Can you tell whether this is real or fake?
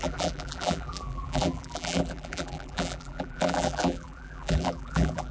fake